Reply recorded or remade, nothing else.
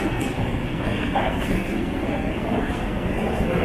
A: remade